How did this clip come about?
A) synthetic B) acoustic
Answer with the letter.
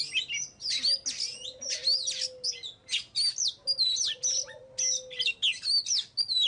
B